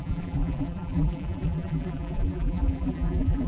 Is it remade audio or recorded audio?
remade